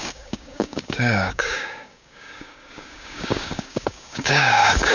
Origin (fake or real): fake